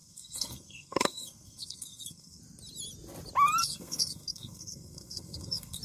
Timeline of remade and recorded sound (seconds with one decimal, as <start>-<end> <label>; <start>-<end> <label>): 0.0-2.4 remade; 2.4-3.6 recorded; 3.6-5.8 remade